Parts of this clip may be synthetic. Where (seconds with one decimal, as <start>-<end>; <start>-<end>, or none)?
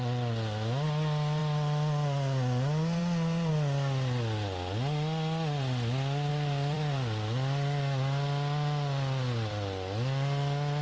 1.4-3.5; 6.3-10.8